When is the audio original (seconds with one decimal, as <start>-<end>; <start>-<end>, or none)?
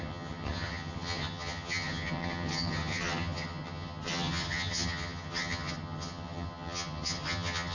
none